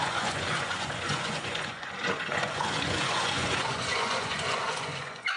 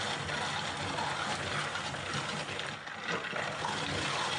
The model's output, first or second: first